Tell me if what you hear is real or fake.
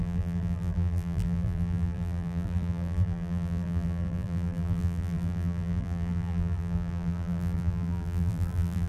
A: fake